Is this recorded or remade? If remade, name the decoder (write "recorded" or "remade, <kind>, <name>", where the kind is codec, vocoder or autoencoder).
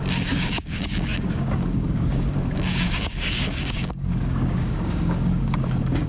remade, codec, DAC